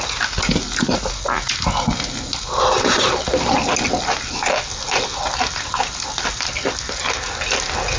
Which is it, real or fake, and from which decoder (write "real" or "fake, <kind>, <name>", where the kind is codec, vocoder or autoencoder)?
real